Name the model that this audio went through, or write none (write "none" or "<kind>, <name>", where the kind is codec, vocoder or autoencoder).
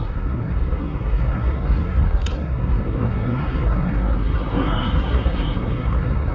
codec, SNAC